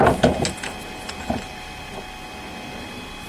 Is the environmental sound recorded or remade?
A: recorded